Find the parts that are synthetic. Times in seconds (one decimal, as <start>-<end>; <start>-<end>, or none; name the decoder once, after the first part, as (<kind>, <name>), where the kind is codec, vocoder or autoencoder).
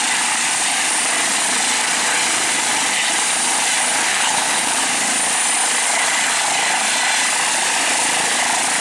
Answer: 4.1-4.8 (codec, HILCodec)